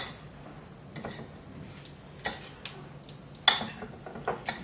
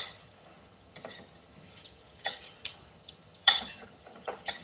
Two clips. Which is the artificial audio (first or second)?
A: second